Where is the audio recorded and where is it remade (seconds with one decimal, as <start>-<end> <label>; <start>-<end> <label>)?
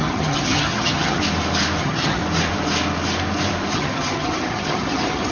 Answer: 0.0-1.2 remade; 1.2-1.8 recorded; 1.8-2.2 remade; 2.2-3.7 recorded; 3.7-5.3 remade